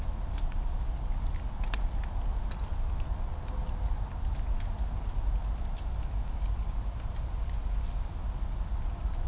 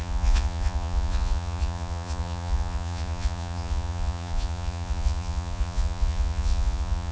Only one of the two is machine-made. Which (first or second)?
second